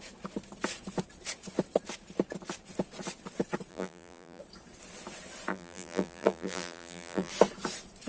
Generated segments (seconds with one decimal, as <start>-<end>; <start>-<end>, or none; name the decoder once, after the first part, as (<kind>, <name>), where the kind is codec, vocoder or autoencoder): 3.7-4.4 (vocoder, BigVGAN v2); 5.5-7.3